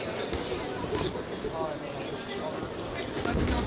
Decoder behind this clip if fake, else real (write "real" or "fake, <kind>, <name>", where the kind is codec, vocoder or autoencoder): real